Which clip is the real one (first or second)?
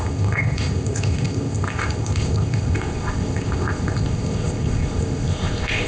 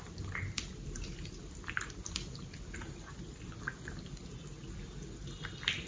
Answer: second